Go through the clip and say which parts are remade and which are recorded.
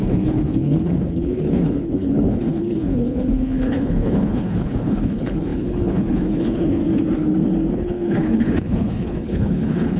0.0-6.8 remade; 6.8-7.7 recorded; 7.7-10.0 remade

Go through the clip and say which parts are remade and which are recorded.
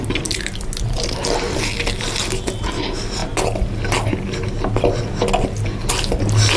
0.0-6.6 recorded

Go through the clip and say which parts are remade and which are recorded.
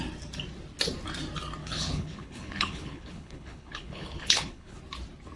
0.0-1.6 recorded; 1.6-4.8 remade; 4.8-5.4 recorded